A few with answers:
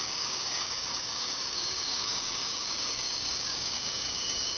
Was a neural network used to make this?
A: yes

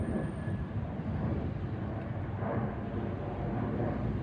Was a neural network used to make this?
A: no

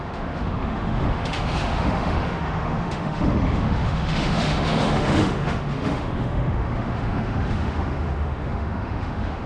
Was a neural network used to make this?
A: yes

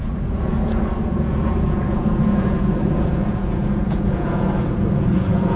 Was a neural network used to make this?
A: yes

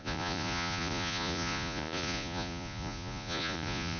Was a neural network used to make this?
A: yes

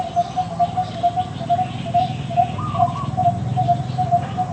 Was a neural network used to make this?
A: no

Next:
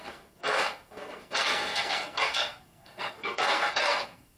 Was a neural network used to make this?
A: yes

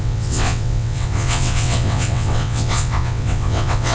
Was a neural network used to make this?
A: yes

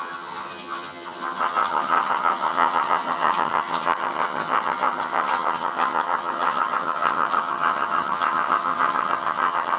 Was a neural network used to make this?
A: yes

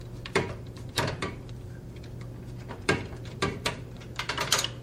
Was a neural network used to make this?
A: yes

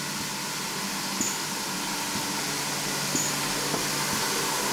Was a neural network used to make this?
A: no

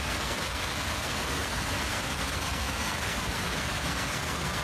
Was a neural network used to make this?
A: yes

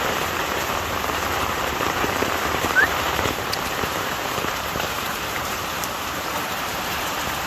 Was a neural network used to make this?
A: yes